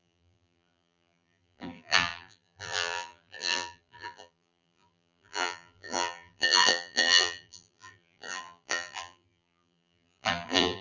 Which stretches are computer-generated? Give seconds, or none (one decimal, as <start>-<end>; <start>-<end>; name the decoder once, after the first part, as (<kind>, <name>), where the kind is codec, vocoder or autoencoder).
0.0-10.8 (vocoder, BigVGAN v2)